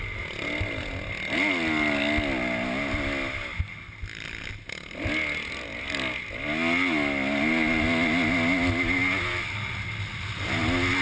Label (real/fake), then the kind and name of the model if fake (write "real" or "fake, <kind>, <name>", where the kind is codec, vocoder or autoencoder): real